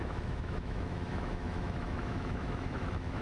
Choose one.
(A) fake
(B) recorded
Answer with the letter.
A